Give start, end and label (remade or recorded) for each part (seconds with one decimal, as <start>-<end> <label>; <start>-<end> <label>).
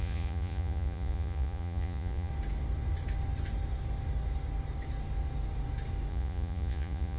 0.0-2.3 remade; 2.3-6.1 recorded; 6.1-7.2 remade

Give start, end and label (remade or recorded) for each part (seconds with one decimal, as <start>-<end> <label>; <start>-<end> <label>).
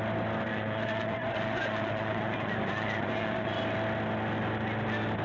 0.0-0.5 recorded; 0.5-3.6 remade; 3.6-5.2 recorded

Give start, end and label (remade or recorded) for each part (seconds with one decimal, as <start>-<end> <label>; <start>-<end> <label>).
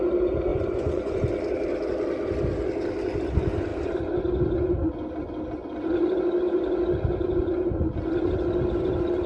0.0-0.5 recorded; 0.5-1.2 remade; 1.2-9.3 recorded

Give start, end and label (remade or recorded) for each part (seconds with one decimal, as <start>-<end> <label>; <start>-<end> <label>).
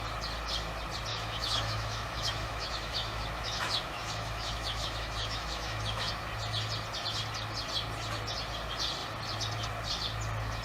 0.0-1.1 recorded; 1.1-6.1 remade; 6.1-10.6 recorded